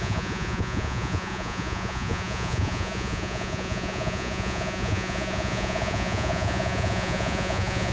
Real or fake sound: fake